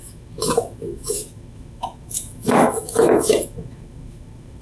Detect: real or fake fake